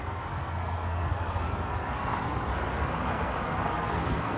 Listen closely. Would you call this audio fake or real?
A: fake